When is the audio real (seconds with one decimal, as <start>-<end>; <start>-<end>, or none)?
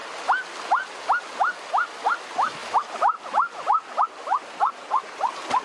0.0-5.6